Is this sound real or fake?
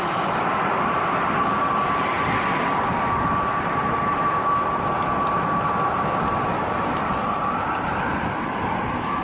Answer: real